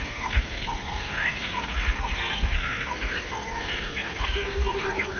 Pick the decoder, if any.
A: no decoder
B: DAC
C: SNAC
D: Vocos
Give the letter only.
C